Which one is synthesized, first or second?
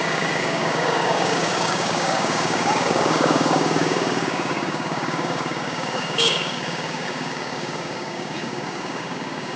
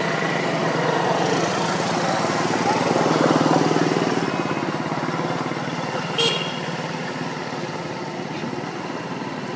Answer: first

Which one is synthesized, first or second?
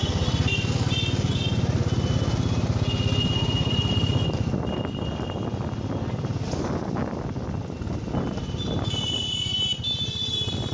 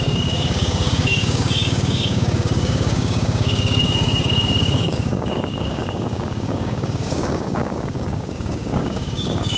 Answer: second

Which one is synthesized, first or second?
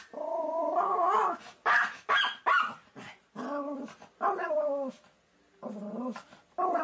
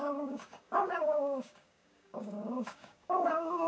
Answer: second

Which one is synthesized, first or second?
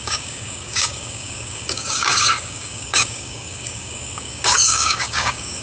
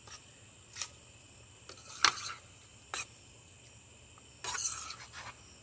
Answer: first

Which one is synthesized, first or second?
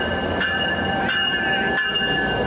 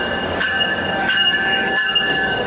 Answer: second